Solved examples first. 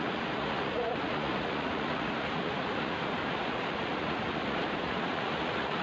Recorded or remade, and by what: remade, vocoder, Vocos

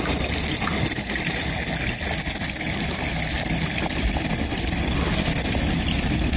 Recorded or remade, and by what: recorded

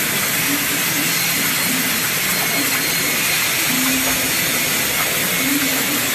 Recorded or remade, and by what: recorded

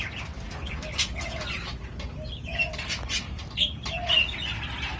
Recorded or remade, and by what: recorded